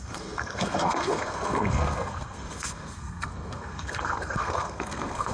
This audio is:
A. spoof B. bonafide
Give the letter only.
A